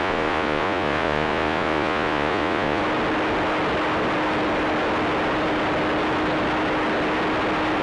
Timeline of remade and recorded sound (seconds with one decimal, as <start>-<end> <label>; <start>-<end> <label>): 0.0-2.8 remade; 2.8-7.8 recorded